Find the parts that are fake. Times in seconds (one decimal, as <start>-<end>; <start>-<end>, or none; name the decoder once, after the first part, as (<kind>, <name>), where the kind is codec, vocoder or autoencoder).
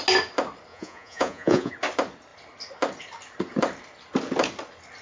0.7-1.7 (vocoder, Vocos)